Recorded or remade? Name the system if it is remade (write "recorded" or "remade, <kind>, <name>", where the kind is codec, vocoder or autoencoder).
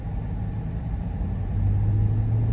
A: recorded